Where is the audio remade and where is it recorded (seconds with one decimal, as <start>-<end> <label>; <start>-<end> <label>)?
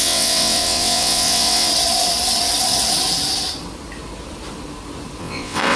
0.0-1.7 remade; 1.7-5.2 recorded; 5.2-5.8 remade